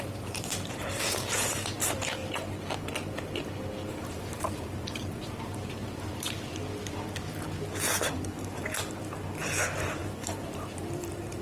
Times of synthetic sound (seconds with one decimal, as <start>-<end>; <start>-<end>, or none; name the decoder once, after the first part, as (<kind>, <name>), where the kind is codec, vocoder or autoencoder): 0.0-2.2 (vocoder, BigVGAN v2); 3.9-6.6; 8.1-11.4